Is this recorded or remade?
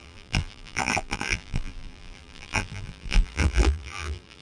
remade